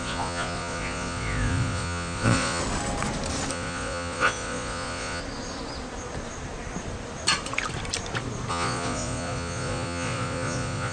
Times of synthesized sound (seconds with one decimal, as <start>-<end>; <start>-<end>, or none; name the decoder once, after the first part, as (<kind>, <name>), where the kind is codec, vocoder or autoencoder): 0.0-2.6 (vocoder, Vocos); 3.5-5.2; 8.5-10.9